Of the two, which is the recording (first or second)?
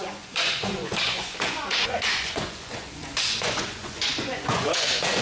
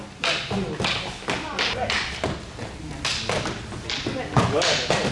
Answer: second